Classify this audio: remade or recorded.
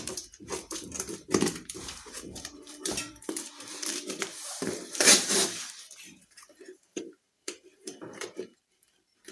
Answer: remade